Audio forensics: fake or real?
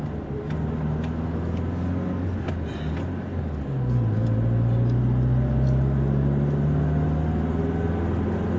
real